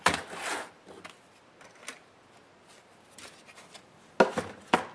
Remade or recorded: recorded